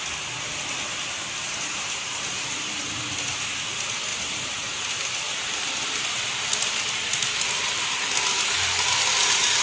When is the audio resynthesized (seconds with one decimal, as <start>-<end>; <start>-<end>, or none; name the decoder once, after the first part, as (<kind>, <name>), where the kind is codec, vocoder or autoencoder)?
0.9-3.0 (vocoder, BigVGAN v2); 4.1-6.2

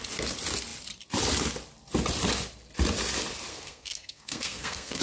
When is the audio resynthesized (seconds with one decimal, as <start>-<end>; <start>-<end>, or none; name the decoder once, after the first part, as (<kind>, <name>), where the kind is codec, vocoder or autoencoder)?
3.5-5.0 (codec, SNAC)

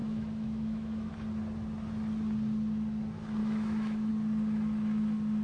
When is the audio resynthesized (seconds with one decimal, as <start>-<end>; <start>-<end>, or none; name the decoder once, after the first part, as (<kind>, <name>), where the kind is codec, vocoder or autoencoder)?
0.0-1.1 (autoencoder, DAC-VAE); 3.4-4.1

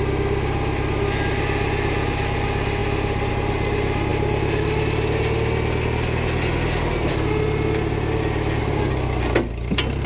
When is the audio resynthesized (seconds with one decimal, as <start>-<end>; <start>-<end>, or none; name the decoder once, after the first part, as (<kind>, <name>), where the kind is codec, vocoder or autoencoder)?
none

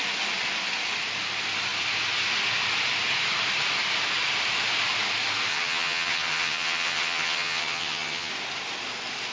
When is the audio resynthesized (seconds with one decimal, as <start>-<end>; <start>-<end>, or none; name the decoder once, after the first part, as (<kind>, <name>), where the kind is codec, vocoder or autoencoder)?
5.5-8.3 (vocoder, HiFi-GAN)

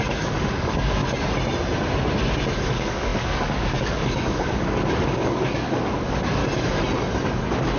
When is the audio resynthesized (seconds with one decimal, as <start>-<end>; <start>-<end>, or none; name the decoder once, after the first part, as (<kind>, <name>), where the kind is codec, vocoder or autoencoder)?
0.0-1.0 (codec, DAC); 2.7-6.4

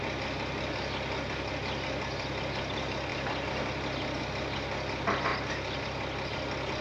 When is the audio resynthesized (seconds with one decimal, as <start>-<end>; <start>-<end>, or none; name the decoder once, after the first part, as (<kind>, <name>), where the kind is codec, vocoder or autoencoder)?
3.1-4.2 (vocoder, BigVGAN v2)

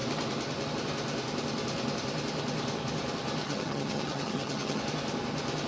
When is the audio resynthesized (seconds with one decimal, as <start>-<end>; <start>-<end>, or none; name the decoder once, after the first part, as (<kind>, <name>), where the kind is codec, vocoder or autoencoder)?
3.4-4.8 (vocoder, HiFi-GAN)